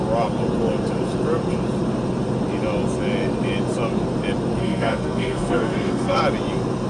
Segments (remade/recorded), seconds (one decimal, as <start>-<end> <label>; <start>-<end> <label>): 0.0-4.6 recorded; 4.6-6.2 remade; 6.2-6.9 recorded